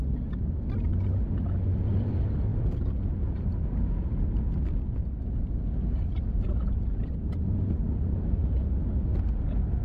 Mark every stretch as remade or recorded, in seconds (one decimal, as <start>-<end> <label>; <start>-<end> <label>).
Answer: 0.0-9.8 recorded